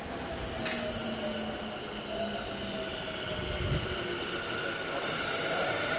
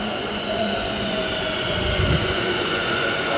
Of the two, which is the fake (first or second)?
second